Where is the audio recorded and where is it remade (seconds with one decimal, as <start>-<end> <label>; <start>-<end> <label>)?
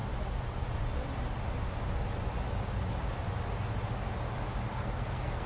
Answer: 0.0-4.7 recorded; 4.7-5.5 remade